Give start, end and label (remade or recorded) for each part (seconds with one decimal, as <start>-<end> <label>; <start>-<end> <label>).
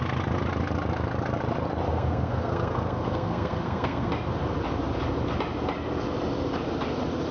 0.0-1.9 recorded; 1.9-4.1 remade; 4.1-7.3 recorded